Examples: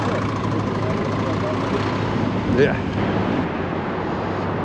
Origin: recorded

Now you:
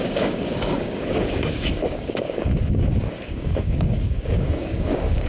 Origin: remade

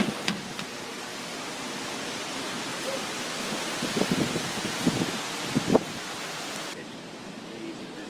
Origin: recorded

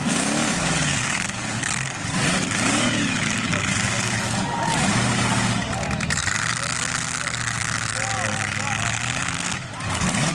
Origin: remade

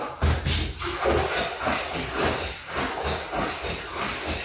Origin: recorded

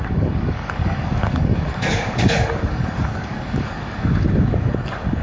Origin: remade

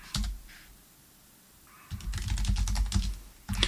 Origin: recorded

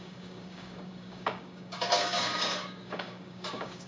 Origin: remade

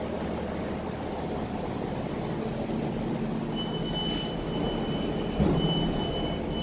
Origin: recorded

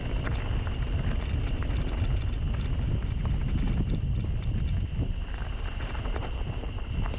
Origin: recorded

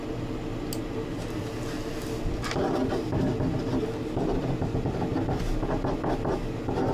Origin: recorded